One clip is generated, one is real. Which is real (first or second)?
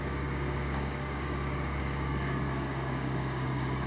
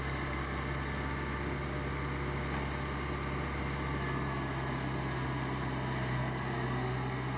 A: second